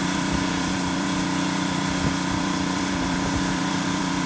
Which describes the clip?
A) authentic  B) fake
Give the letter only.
B